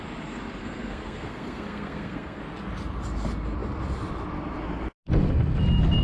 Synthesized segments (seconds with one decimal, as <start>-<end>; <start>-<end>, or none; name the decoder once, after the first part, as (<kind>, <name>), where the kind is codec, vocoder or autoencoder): 0.6-2.4 (codec, SNAC)